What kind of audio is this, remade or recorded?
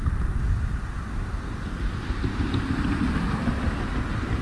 recorded